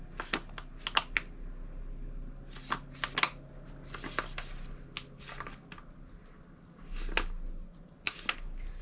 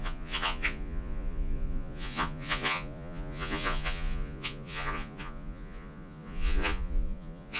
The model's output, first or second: second